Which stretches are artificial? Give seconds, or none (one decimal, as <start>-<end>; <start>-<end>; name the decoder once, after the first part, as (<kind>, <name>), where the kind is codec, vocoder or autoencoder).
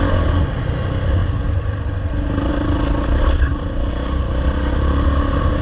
none